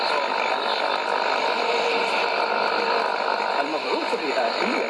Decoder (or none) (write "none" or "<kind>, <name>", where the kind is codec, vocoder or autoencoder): none